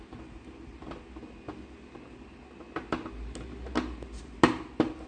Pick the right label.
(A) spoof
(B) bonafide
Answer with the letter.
B